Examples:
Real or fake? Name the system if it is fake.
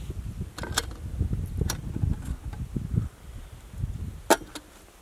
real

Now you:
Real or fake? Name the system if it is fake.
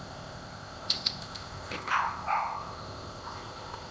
fake, codec, ZipCodec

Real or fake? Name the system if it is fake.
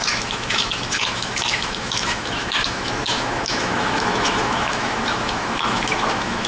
fake, autoencoder, DAC-VAE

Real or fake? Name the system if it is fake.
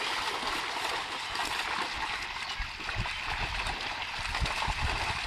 real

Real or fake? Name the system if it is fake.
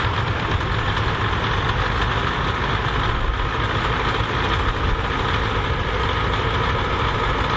real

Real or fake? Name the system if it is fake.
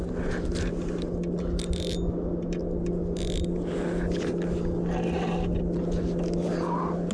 real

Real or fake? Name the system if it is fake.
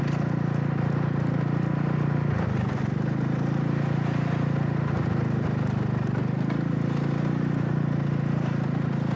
real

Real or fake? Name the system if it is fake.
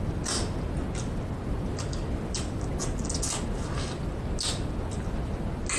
real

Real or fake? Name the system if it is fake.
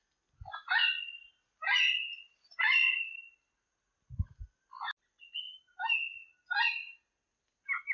real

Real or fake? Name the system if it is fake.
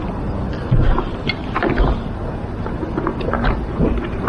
real